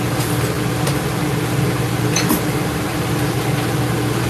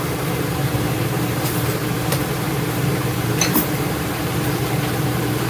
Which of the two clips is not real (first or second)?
second